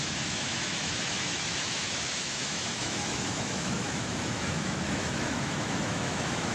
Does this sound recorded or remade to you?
remade